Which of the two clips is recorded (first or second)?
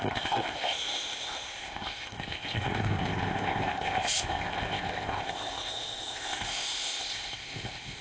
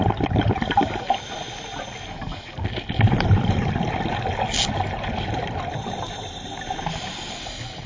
second